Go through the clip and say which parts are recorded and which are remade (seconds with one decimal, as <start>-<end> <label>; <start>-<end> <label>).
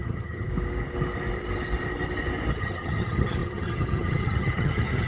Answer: 0.0-0.5 remade; 0.5-2.6 recorded; 2.6-5.1 remade